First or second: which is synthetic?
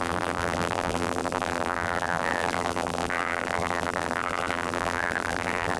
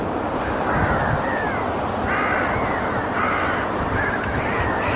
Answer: first